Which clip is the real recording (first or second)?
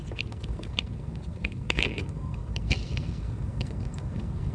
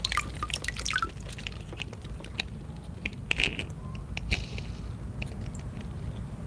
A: second